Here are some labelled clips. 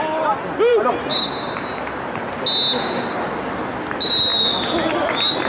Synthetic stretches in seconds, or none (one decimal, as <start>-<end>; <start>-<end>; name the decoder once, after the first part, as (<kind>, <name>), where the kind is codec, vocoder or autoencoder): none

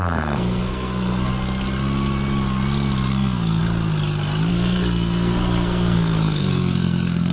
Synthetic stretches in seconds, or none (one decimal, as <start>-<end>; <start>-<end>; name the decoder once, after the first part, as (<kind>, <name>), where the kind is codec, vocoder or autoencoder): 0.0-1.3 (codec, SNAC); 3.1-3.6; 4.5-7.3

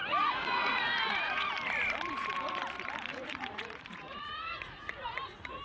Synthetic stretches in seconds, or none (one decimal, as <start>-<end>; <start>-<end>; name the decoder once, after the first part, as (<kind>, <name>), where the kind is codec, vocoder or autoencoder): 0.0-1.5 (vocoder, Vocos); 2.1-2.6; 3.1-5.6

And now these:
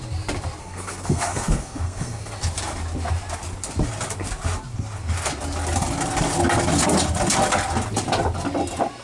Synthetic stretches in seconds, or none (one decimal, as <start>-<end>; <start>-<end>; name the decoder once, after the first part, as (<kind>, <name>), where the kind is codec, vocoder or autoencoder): 0.6-2.3 (codec, SNAC)

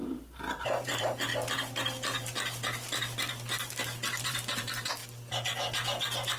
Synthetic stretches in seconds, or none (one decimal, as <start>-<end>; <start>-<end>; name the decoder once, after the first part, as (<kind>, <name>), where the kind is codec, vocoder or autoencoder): 0.0-1.3 (vocoder, BigVGAN v2); 4.2-5.0

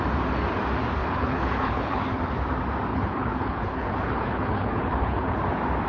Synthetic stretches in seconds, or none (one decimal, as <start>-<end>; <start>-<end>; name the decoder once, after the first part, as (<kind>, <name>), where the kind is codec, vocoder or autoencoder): 1.0-2.2 (codec, HILCodec); 2.9-5.4

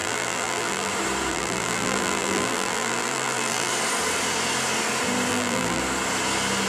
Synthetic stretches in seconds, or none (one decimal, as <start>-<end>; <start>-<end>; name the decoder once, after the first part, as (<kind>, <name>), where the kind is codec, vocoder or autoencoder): 0.0-0.9 (vocoder, BigVGAN v2); 1.3-3.7; 5.3-5.8